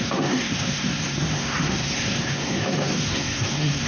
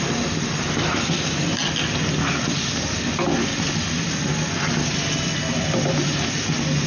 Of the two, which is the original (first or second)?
second